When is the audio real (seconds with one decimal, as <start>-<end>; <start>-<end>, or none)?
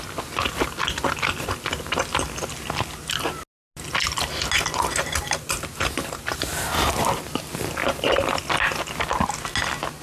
0.0-7.8; 8.4-10.0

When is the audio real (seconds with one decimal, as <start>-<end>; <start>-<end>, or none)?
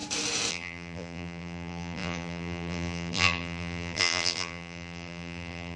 0.0-0.5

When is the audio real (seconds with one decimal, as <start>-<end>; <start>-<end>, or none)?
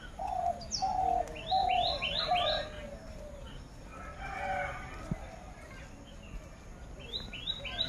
0.0-1.6; 2.4-7.9